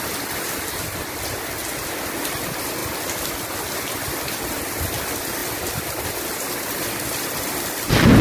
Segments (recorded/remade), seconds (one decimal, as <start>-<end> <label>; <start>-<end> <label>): 0.0-2.8 remade; 2.8-4.8 recorded; 4.8-5.4 remade; 5.4-6.9 recorded; 6.9-8.2 remade